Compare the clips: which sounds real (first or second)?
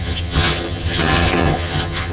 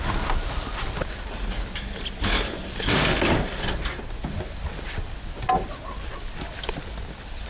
second